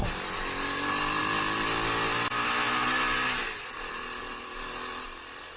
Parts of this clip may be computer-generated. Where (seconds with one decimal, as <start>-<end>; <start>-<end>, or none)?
none